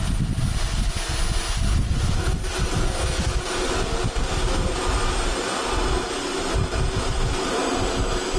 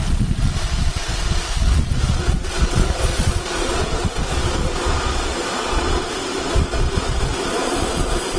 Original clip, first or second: first